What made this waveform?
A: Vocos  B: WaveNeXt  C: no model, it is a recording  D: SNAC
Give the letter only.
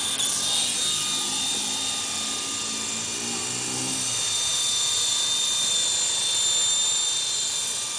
C